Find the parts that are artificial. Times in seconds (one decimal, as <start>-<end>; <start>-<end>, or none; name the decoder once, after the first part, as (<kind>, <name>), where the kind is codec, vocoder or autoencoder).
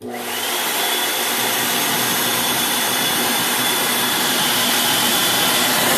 2.1-4.4 (vocoder, BigVGAN v2); 5.1-6.0